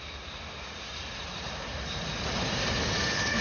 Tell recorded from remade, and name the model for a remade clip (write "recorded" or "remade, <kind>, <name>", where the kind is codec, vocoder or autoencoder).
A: recorded